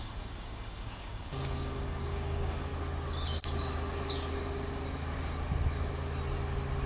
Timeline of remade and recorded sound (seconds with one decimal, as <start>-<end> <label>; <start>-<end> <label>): 0.0-2.7 remade; 2.7-6.9 recorded